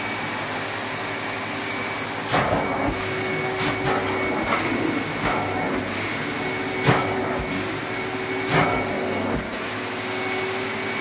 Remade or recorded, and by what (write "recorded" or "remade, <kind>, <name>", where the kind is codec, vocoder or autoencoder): recorded